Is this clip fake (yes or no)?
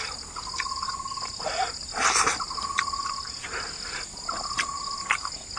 no